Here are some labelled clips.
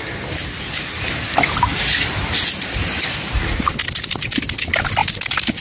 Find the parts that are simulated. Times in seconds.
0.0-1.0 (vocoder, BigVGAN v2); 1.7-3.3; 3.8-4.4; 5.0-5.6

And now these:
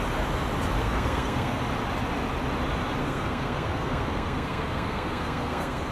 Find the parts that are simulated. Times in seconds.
0.8-1.6 (codec, SNAC); 3.0-5.9

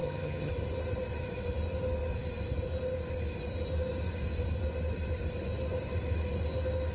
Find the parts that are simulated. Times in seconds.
0.0-0.5 (vocoder, HiFi-GAN)

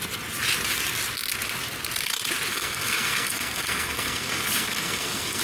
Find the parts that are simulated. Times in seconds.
2.5-5.4 (codec, SNAC)

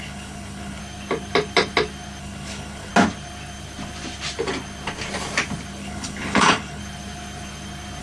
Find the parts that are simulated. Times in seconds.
0.0-0.8 (codec, HILCodec); 2.2-2.9; 5.8-6.8